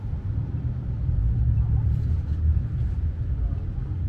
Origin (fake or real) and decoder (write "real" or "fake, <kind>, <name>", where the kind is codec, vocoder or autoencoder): fake, vocoder, BigVGAN v2